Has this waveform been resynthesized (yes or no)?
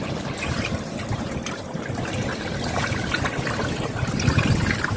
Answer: no